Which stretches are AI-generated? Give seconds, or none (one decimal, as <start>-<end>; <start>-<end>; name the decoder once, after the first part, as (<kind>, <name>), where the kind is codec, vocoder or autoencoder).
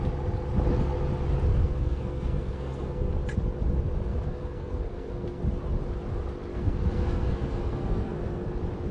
1.5-3.1 (codec, SNAC); 4.1-5.4; 6.5-8.5